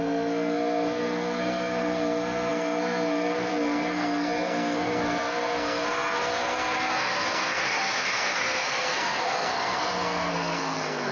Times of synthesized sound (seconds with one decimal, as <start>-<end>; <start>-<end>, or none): 0.0-11.1